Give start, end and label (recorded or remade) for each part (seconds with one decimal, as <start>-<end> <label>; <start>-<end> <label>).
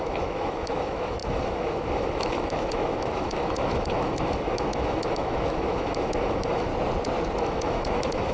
0.0-6.7 remade; 6.7-7.4 recorded; 7.4-8.3 remade